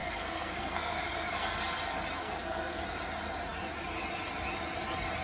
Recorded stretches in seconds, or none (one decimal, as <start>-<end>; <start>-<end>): 1.6-2.2; 2.8-5.2